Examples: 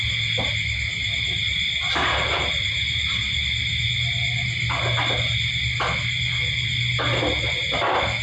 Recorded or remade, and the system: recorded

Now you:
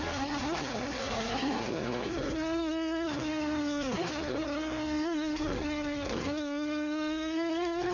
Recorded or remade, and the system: remade, codec, SNAC